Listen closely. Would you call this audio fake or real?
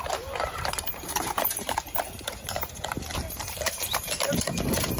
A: fake